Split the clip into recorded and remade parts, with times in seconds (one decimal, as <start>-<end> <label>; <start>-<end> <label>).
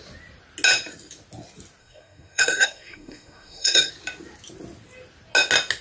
0.0-1.8 recorded; 1.8-3.9 remade; 3.9-5.8 recorded